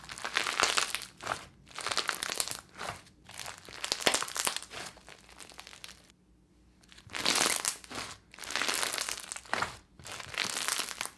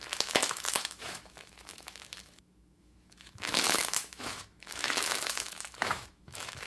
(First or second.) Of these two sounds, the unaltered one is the first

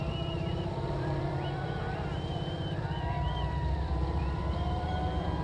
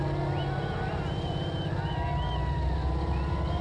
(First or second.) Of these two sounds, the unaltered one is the second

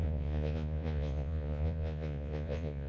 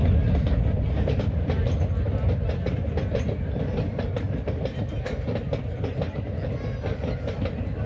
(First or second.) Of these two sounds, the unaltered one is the second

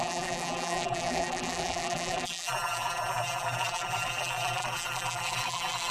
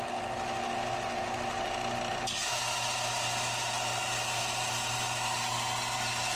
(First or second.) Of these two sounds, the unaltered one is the second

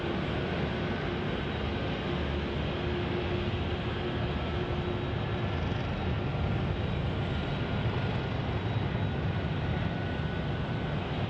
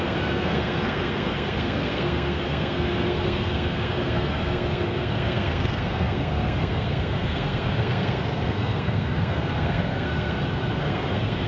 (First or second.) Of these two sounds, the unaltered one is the first